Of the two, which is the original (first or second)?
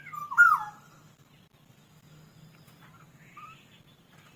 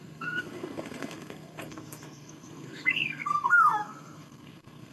first